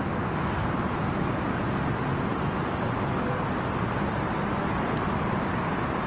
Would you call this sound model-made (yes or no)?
no